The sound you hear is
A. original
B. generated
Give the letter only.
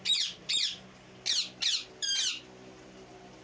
A